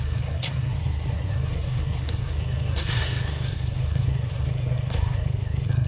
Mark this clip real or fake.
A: fake